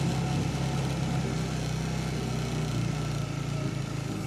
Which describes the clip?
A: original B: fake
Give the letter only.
A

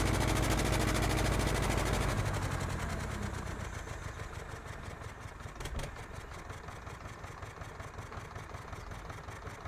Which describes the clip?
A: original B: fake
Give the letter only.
A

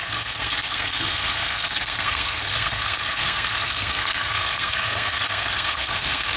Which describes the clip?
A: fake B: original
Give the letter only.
A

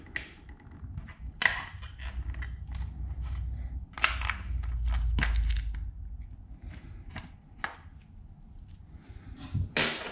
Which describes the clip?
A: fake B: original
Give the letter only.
B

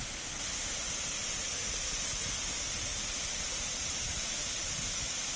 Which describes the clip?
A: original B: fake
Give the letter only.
A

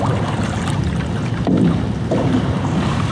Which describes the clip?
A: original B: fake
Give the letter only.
A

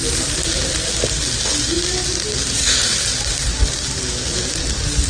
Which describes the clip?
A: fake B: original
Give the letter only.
B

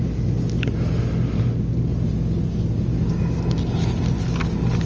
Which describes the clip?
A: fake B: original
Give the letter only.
B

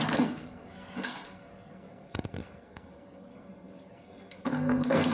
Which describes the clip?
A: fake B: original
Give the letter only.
A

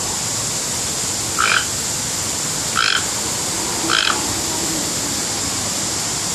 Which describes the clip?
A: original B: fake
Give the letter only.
A